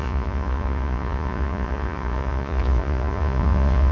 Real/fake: fake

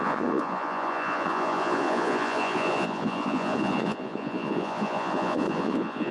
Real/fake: fake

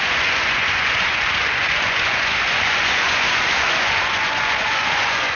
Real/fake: fake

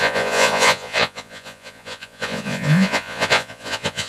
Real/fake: fake